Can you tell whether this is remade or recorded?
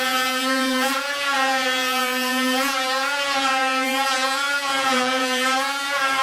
remade